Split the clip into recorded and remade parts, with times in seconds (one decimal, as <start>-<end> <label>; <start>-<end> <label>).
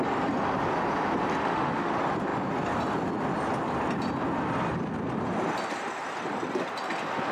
0.0-1.4 recorded; 1.4-1.9 remade; 1.9-7.3 recorded